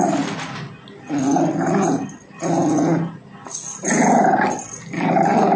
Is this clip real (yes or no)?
yes